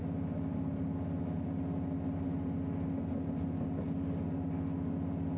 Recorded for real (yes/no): yes